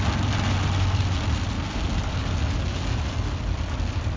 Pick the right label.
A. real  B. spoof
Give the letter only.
A